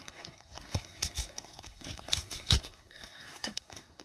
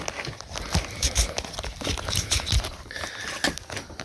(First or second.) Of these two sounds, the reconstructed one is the first